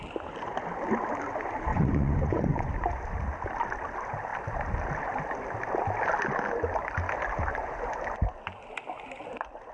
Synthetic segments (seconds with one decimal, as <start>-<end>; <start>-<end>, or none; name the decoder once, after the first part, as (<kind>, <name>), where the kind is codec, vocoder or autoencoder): 1.7-2.7 (vocoder, Vocos)